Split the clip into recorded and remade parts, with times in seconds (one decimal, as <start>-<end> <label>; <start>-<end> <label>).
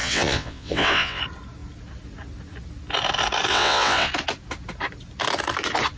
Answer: 0.0-1.2 remade; 1.2-3.5 recorded; 3.5-4.1 remade; 4.1-6.0 recorded